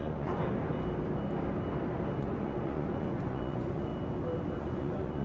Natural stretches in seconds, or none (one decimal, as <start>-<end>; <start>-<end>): 0.4-2.2; 3.9-4.6

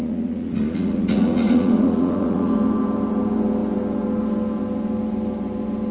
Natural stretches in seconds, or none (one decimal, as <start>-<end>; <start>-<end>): 2.5-5.9

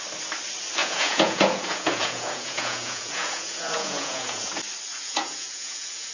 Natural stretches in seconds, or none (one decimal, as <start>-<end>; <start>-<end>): 0.0-0.8; 4.5-4.9

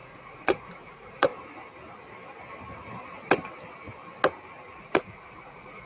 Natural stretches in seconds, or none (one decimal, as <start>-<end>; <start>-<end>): 1.3-4.8

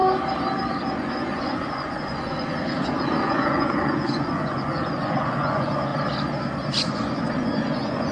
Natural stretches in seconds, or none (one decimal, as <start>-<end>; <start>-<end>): 0.0-0.9; 5.9-6.8

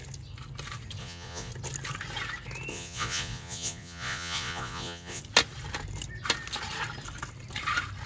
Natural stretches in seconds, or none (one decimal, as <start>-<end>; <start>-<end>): 0.0-1.0; 1.5-2.7; 5.2-8.1

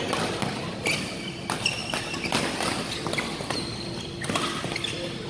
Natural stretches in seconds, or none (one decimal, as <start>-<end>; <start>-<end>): 0.0-5.3